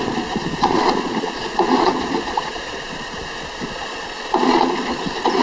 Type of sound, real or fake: fake